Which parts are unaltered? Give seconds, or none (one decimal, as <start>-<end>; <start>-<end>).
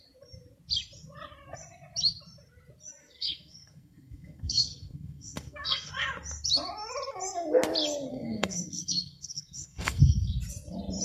0.0-3.0; 5.9-8.1; 10.4-11.0